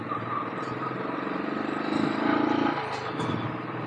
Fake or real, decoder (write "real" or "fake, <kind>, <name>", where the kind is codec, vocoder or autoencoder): fake, vocoder, BigVGAN v2